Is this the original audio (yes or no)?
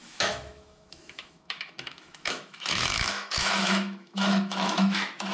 no